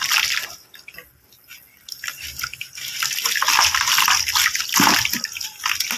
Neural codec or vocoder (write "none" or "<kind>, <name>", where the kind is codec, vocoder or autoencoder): none